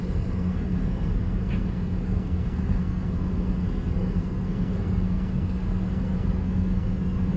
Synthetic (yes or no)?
yes